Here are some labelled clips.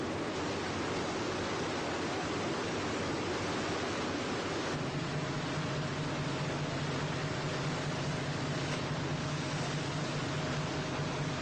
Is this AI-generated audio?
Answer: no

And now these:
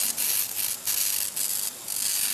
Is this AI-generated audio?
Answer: no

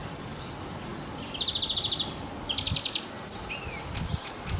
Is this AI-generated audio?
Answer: no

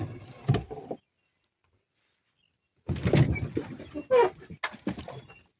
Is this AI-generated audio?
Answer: no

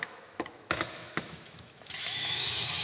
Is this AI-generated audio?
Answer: yes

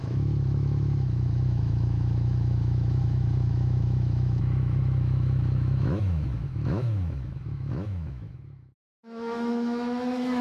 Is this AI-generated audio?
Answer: yes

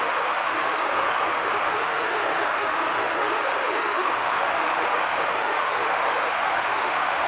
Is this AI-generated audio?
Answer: yes